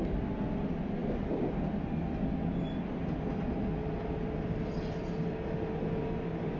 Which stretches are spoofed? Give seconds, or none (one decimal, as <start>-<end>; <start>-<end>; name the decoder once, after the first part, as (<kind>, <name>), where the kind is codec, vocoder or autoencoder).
none